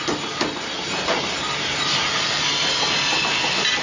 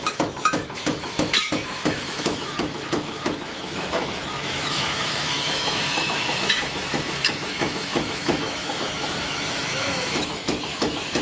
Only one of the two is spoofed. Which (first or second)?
second